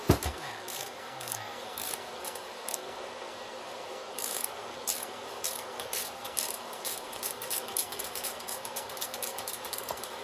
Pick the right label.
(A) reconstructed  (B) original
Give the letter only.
A